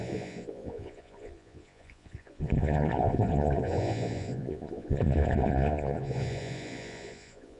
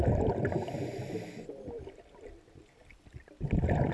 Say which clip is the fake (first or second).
first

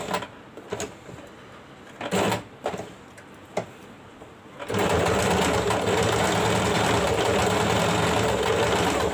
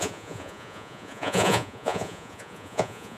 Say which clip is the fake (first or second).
second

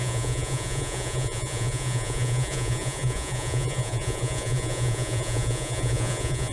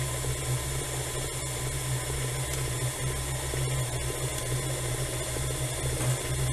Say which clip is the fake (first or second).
first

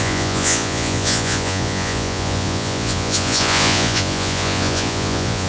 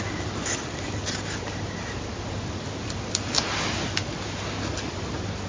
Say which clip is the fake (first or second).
first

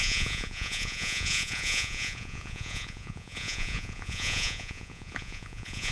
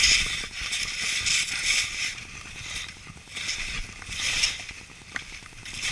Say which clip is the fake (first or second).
first